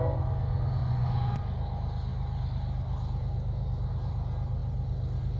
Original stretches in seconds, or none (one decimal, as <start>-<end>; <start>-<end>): 0.0-0.8; 1.4-5.4